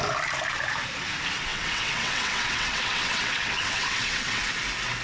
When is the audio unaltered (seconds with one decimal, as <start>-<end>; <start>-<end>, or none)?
0.0-1.5; 4.5-5.0